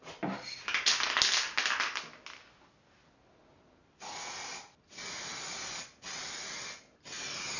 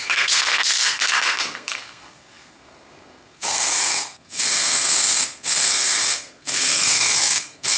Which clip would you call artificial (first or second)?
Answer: second